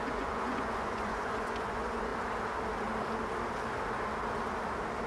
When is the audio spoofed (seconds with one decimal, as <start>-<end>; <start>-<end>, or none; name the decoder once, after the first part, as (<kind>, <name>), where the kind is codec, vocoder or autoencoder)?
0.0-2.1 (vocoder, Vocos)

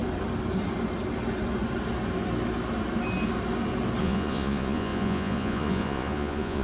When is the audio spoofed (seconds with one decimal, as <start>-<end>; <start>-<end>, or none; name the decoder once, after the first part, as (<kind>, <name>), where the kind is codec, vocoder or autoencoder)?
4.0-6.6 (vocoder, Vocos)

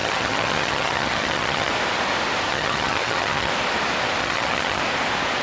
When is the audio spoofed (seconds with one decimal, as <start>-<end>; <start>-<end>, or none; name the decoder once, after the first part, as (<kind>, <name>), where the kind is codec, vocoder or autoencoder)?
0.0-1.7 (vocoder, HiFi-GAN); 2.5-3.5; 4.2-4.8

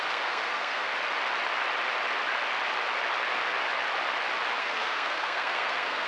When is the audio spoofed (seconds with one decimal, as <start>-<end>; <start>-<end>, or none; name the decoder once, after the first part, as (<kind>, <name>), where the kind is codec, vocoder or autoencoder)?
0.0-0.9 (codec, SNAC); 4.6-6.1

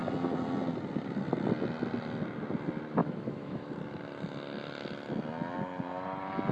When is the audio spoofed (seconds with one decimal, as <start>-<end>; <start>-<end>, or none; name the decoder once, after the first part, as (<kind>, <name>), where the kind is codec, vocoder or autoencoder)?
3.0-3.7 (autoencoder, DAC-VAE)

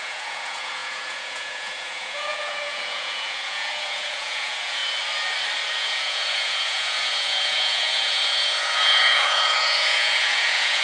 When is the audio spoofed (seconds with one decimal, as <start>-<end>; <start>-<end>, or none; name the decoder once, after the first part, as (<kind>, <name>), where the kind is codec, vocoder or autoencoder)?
0.0-4.8 (vocoder, Vocos); 5.7-10.8